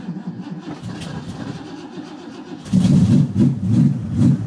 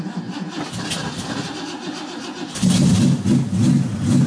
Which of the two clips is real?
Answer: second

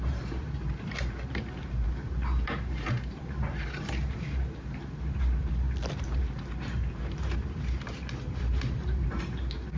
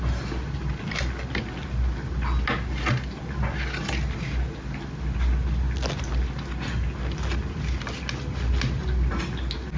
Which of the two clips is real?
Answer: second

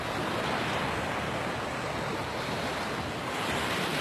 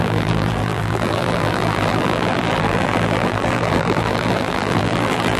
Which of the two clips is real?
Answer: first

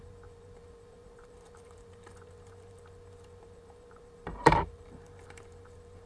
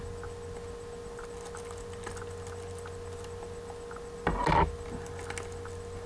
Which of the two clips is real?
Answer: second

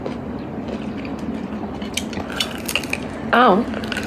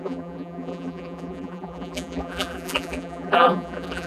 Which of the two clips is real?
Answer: first